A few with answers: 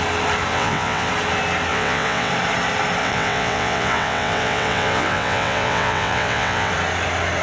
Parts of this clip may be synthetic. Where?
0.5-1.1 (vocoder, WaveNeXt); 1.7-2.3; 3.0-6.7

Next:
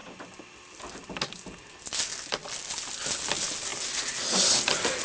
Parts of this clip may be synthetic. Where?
none

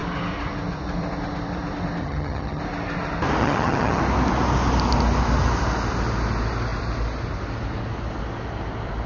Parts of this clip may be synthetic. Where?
2.0-2.6 (vocoder, HiFi-GAN); 3.4-4.0

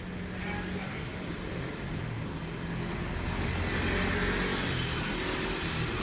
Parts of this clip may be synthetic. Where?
none

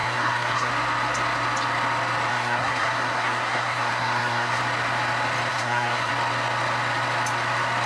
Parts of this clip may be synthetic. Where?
0.0-0.7 (codec, SNAC); 2.3-4.6; 5.5-6.1